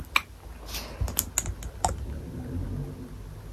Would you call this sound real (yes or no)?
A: yes